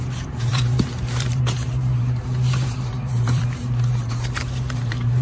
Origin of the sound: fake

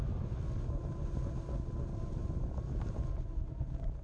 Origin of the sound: real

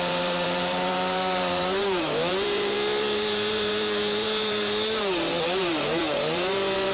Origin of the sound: fake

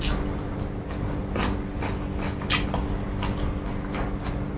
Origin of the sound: real